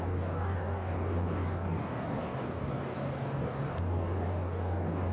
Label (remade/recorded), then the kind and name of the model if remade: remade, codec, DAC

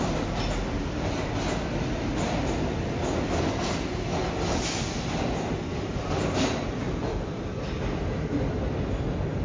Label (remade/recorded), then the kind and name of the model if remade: recorded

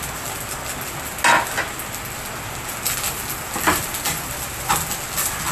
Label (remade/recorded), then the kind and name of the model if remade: recorded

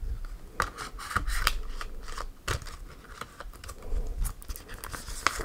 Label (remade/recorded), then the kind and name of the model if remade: recorded